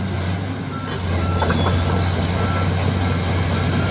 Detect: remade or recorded recorded